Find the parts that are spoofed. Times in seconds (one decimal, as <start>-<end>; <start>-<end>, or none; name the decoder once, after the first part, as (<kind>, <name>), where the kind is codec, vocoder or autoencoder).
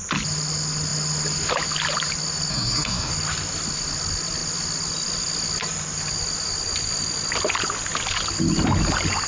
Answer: 2.5-3.1 (codec, SNAC)